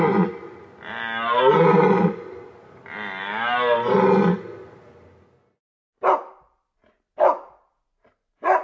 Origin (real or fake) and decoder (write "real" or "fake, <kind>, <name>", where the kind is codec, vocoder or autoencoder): real